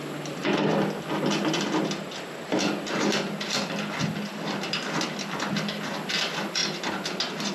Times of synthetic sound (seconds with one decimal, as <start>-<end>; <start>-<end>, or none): none